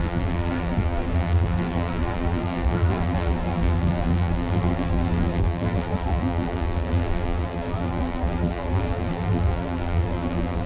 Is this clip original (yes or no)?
no